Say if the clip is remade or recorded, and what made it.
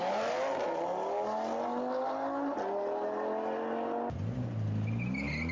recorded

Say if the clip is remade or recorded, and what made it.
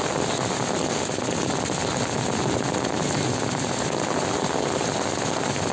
recorded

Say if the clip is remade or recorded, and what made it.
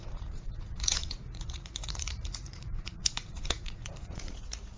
remade, vocoder, Vocos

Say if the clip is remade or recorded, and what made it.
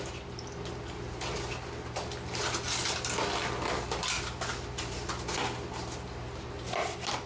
recorded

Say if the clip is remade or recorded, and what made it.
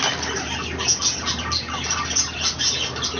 recorded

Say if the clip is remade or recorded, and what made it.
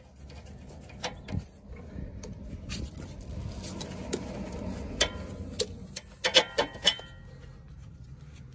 recorded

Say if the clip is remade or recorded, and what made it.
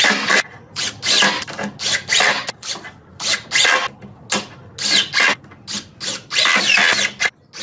recorded